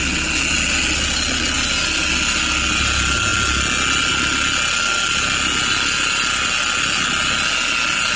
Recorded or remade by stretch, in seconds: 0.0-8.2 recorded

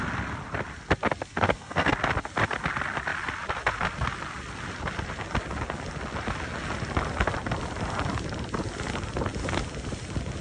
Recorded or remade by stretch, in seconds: 0.0-1.3 recorded; 1.3-1.9 remade; 1.9-10.4 recorded

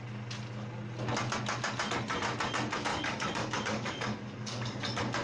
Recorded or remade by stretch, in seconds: 0.0-2.9 recorded; 2.9-4.8 remade; 4.8-5.2 recorded

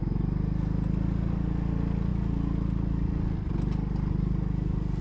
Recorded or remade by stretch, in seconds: 0.0-5.0 recorded

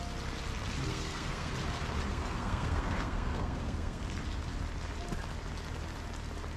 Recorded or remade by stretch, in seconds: 0.0-0.9 recorded; 0.9-1.5 remade; 1.5-2.1 recorded; 2.1-4.0 remade; 4.0-6.6 recorded